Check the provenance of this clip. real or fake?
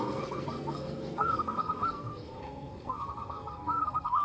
fake